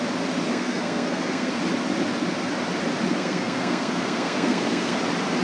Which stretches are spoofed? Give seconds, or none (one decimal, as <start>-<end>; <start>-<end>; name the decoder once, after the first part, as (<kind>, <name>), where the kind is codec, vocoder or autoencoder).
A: 0.5-1.6 (codec, SNAC); 3.1-5.0